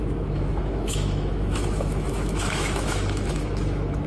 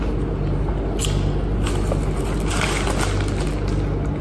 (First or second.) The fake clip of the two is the first